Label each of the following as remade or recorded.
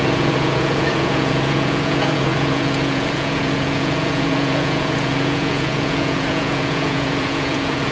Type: remade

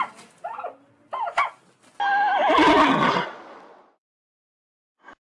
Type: recorded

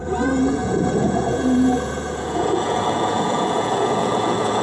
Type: remade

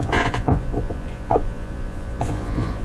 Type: remade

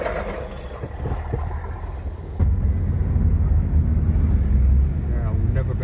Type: recorded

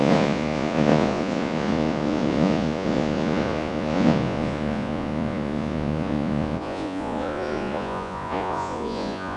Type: remade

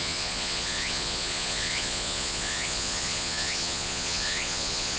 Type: remade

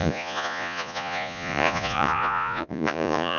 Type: remade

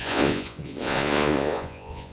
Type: remade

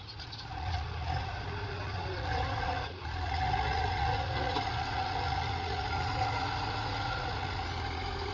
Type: remade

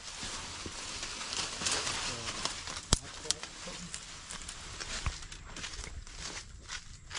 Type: recorded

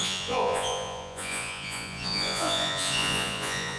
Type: remade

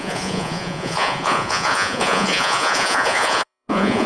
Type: remade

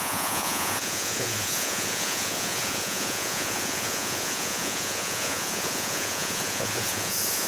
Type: remade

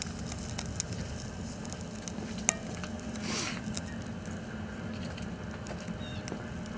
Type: recorded